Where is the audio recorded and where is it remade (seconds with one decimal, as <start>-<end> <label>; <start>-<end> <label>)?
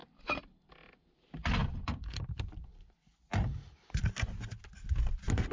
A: 0.0-0.7 remade; 0.7-1.6 recorded; 1.6-4.0 remade; 4.0-5.5 recorded